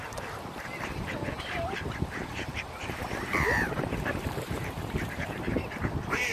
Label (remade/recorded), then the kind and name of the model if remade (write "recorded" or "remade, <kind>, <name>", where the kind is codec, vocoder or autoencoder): remade, vocoder, BigVGAN v2